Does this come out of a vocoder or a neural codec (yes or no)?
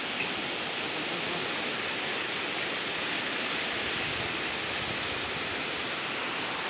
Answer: yes